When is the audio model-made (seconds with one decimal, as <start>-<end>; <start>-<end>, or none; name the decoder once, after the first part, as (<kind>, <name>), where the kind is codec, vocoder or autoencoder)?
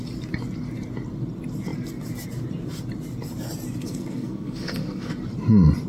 3.8-5.1 (codec, SNAC)